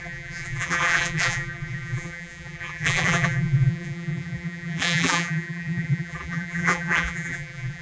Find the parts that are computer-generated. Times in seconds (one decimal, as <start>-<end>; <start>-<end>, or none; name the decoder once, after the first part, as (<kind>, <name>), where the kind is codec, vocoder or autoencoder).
0.0-7.8 (vocoder, BigVGAN v2)